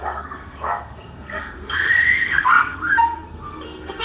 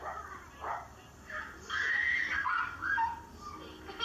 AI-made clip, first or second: first